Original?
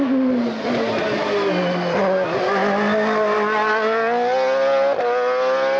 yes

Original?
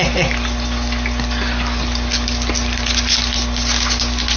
yes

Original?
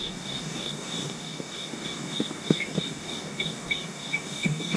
no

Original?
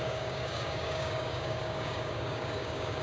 no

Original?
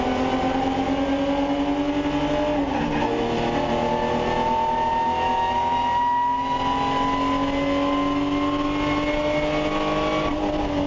yes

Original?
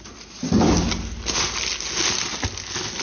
yes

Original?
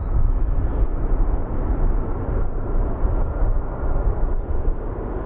yes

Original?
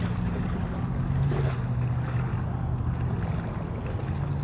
yes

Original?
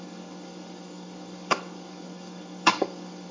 no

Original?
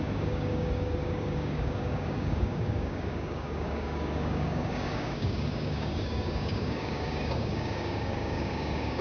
no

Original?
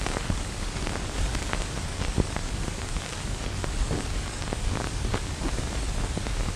no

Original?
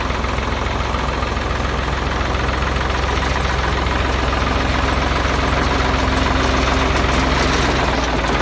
yes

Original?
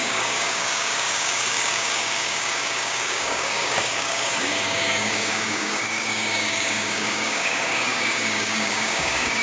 no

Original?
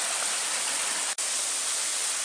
yes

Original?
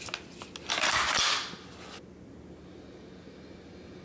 yes